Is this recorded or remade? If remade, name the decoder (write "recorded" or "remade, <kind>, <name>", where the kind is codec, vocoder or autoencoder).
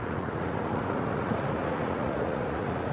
remade, vocoder, Vocos